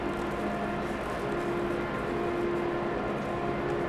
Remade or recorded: recorded